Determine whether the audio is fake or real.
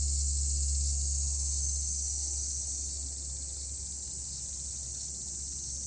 real